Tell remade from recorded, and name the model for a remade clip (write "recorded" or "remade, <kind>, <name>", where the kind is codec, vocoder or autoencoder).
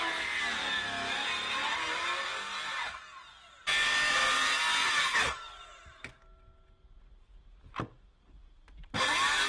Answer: recorded